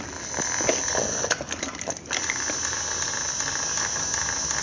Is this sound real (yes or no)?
yes